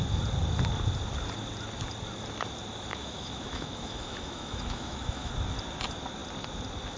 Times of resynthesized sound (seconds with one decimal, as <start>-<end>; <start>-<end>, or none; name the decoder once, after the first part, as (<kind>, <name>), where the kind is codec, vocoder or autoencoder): 2.9-5.3 (autoencoder, DAC-VAE)